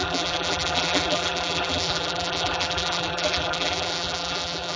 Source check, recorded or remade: remade